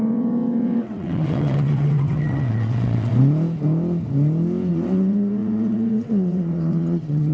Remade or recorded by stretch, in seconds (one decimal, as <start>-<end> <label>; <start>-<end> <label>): 0.0-3.1 remade; 3.1-4.7 recorded; 4.7-7.3 remade